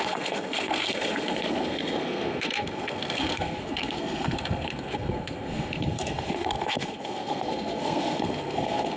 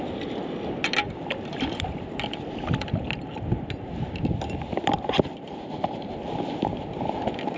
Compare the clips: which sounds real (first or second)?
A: second